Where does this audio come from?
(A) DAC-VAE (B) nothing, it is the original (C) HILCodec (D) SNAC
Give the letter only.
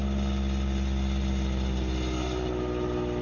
B